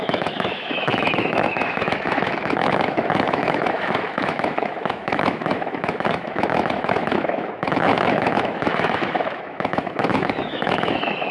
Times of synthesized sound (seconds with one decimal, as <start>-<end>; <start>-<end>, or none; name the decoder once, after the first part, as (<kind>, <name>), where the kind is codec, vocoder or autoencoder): 0.0-11.3 (autoencoder, DAC-VAE)